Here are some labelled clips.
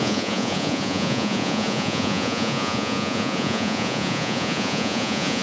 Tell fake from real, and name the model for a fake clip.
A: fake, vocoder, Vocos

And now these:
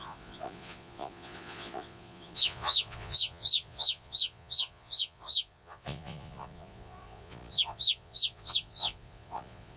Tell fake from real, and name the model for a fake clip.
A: fake, vocoder, Vocos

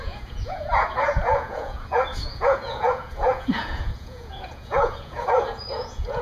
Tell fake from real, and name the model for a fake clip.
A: fake, vocoder, Vocos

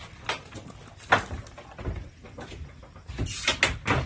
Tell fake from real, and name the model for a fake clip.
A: real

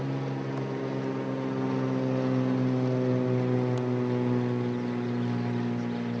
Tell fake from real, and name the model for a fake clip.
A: real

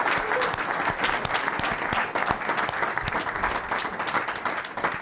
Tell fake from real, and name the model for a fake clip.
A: real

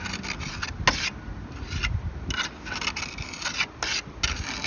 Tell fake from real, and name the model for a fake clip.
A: real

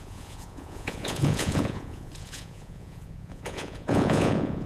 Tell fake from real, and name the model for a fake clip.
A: fake, vocoder, Vocos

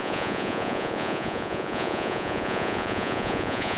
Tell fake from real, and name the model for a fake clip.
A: fake, vocoder, Vocos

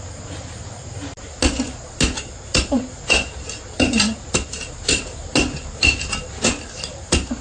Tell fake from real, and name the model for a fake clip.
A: real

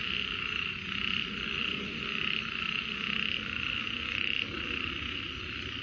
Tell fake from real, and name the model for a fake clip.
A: real